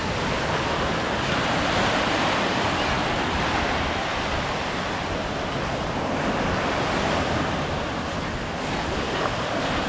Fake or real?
real